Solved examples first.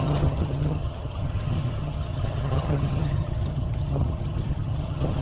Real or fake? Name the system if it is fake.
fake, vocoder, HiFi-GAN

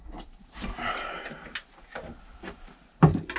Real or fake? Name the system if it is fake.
fake, vocoder, BigVGAN v2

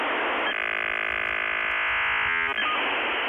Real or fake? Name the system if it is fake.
real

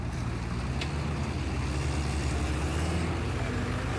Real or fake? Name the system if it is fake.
real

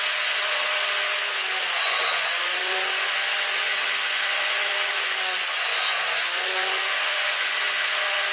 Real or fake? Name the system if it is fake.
fake, vocoder, Vocos